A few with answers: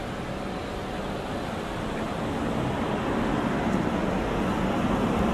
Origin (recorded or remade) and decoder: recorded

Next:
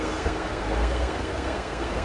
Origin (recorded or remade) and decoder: remade, codec, SNAC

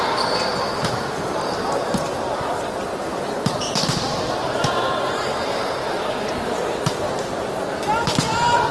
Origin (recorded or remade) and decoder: recorded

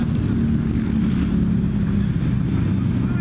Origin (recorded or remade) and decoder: recorded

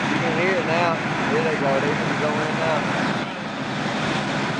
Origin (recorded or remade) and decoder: recorded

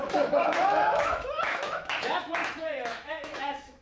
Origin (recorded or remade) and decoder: remade, autoencoder, DAC-VAE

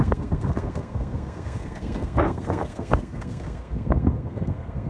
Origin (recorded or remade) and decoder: remade, codec, SNAC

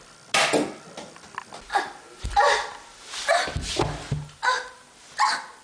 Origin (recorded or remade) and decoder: recorded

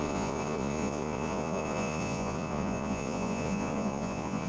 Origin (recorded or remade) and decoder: remade, vocoder, Vocos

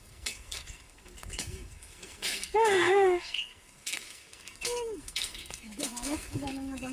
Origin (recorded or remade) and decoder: remade, codec, SNAC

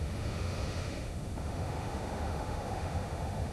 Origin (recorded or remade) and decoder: remade, autoencoder, DAC-VAE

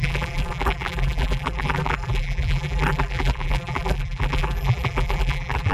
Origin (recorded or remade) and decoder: remade, vocoder, BigVGAN v2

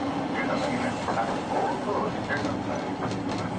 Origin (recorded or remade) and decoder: recorded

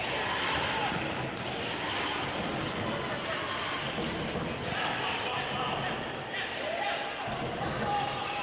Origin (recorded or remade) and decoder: recorded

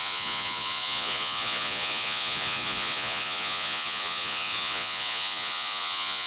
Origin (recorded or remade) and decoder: remade, vocoder, Vocos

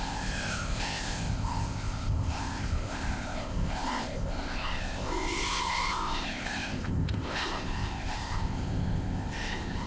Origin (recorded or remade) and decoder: remade, codec, ZipCodec